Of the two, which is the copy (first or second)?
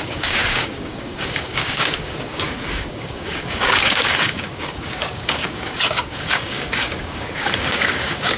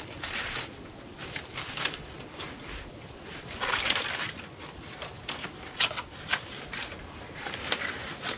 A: first